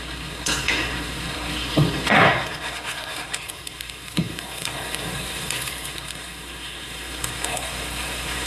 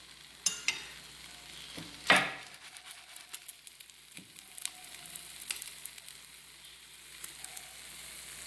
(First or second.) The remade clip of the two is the first